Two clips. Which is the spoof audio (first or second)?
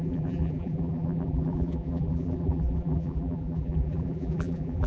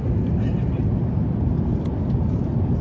first